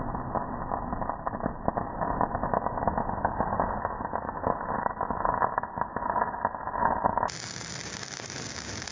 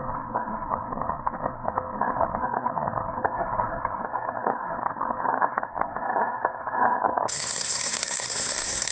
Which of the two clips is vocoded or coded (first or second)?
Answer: second